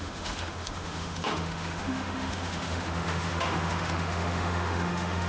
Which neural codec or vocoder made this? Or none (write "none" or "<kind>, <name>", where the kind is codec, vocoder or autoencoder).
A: autoencoder, DAC-VAE